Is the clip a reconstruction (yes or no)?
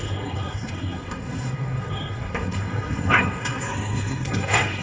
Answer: yes